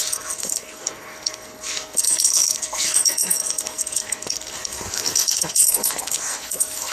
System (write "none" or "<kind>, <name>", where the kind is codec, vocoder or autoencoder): codec, SNAC